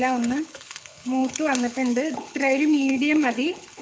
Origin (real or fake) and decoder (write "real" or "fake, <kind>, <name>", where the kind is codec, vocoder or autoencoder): fake, codec, HILCodec